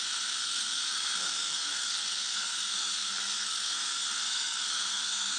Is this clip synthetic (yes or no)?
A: yes